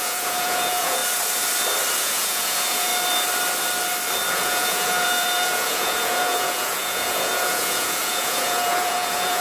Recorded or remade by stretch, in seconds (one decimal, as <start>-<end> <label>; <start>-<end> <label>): 0.0-1.0 remade; 1.0-2.0 recorded; 2.0-2.9 remade; 2.9-4.3 recorded; 4.3-9.4 remade